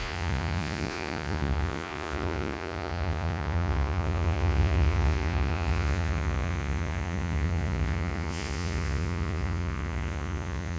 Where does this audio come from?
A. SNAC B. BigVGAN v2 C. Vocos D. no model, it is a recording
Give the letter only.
C